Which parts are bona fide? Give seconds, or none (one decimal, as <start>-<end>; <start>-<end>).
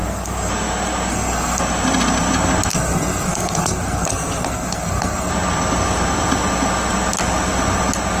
0.5-1.1; 1.6-2.7; 5.3-8.2